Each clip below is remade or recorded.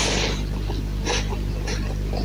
recorded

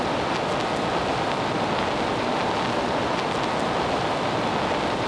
recorded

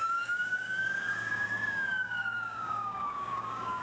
remade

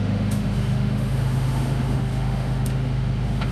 remade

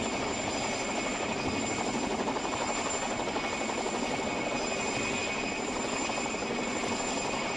recorded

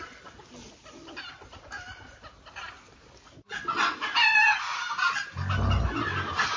recorded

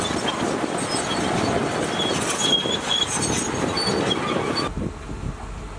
recorded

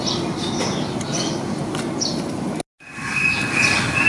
recorded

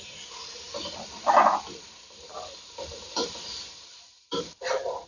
remade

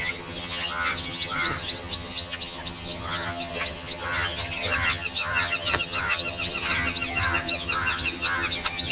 remade